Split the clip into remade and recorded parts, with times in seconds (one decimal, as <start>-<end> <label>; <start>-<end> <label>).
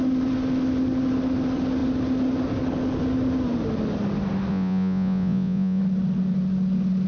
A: 0.0-4.5 recorded; 4.5-5.8 remade; 5.8-7.1 recorded